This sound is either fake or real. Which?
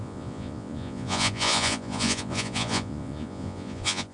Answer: fake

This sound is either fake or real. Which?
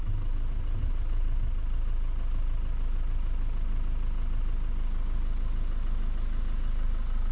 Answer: real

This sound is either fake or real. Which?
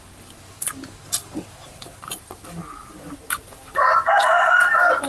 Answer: real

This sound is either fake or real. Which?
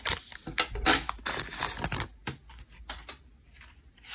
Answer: real